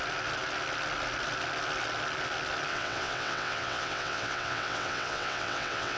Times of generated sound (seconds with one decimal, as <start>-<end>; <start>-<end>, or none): 2.7-6.0